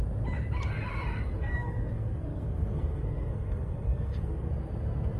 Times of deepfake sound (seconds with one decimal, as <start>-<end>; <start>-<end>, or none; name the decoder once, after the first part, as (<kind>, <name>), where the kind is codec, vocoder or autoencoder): 1.4-4.5 (codec, SNAC)